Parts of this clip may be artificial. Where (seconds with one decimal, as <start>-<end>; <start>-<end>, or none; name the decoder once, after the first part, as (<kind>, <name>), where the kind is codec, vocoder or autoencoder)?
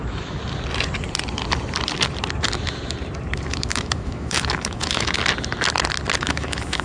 0.0-0.4 (autoencoder, DAC-VAE); 3.5-5.2; 6.2-6.8